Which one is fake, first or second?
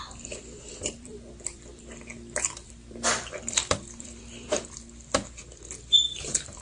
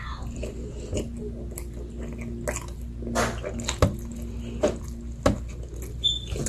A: first